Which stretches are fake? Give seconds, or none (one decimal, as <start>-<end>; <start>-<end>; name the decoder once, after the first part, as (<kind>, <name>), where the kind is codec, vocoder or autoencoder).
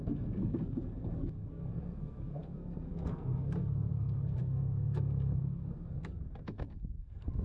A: 0.0-7.4 (codec, SNAC)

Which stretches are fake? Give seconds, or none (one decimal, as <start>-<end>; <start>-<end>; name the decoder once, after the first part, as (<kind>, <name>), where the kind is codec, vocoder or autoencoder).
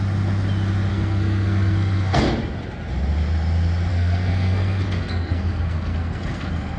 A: 0.9-2.2 (codec, SNAC); 3.9-6.8